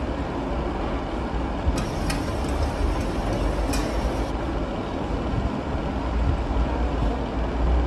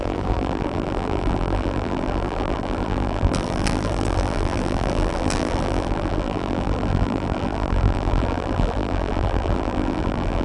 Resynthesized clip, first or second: second